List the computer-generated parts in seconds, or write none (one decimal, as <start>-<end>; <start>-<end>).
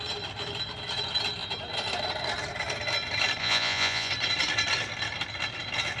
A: 3.4-4.1